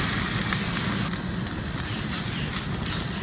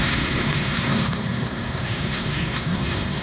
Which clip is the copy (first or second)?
second